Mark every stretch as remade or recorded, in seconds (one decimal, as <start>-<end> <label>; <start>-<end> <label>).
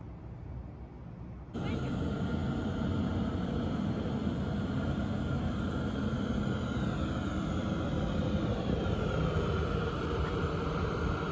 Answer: 0.0-8.5 recorded; 8.5-10.4 remade; 10.4-11.3 recorded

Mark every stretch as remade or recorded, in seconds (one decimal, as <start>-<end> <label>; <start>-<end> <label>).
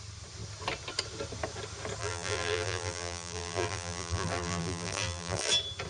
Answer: 0.0-2.0 recorded; 2.0-5.5 remade; 5.5-5.9 recorded